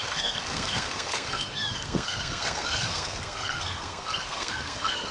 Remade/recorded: remade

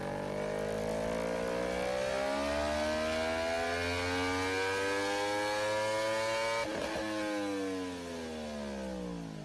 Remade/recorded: recorded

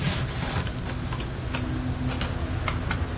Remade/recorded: recorded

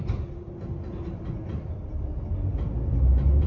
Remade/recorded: recorded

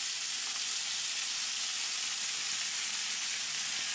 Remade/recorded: recorded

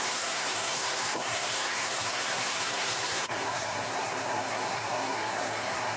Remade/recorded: remade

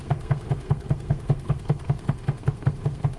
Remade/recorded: remade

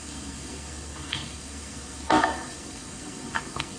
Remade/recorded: remade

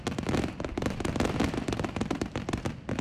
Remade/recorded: recorded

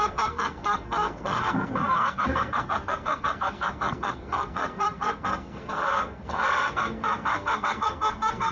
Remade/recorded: remade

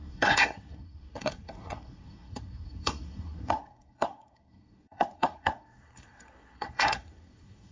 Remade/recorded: remade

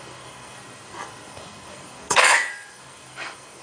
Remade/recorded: remade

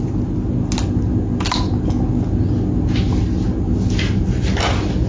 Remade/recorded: recorded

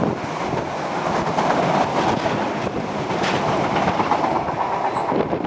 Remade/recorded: recorded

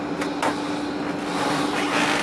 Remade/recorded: recorded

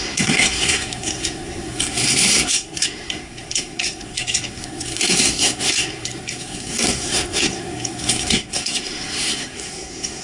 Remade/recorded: remade